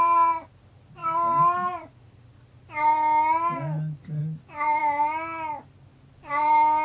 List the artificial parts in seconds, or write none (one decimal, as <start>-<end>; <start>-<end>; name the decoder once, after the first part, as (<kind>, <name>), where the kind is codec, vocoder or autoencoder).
none